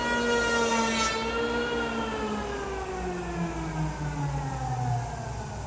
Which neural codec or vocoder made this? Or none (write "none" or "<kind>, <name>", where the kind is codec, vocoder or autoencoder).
none